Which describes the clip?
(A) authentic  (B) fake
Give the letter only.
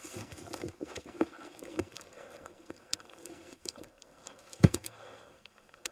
B